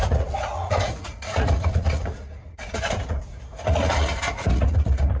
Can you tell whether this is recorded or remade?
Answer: remade